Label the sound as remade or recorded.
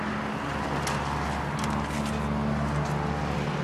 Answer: recorded